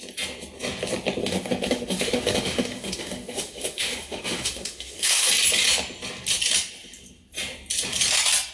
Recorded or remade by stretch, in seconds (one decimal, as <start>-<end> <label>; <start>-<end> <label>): 0.0-1.2 recorded; 1.2-5.3 remade; 5.3-8.5 recorded